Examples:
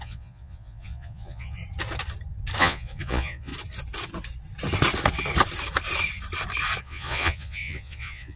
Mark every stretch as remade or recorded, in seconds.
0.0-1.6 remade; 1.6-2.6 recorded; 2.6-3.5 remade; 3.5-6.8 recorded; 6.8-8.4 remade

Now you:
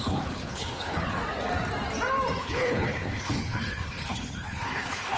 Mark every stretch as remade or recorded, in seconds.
0.0-1.2 remade; 1.2-2.4 recorded; 2.4-5.2 remade

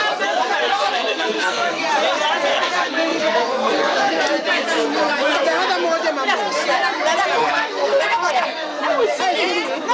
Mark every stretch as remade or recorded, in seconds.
0.0-0.7 recorded; 0.7-1.8 remade; 1.8-2.5 recorded; 2.5-4.2 remade; 4.2-7.4 recorded; 7.4-8.8 remade; 8.8-9.9 recorded

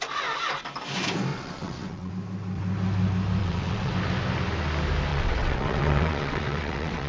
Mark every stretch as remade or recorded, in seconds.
0.0-1.3 recorded; 1.3-2.1 remade; 2.1-3.4 recorded; 3.4-3.9 remade; 3.9-5.1 recorded; 5.1-7.1 remade

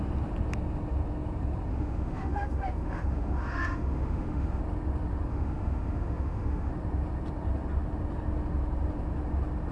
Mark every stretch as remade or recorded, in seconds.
0.0-1.7 recorded; 1.7-4.6 remade; 4.6-5.3 recorded; 5.3-6.7 remade; 6.7-9.7 recorded

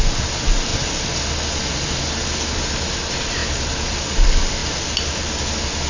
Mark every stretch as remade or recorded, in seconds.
0.0-5.9 recorded